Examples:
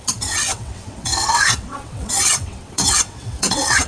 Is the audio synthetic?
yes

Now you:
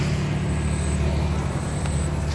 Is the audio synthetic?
no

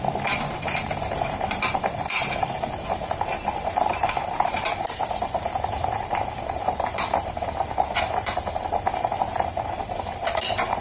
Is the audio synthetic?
yes